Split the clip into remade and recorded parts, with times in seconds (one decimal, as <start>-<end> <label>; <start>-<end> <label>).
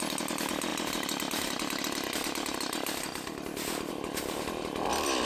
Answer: 0.0-5.3 recorded